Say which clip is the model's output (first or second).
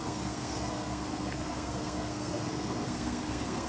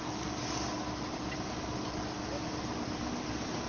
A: first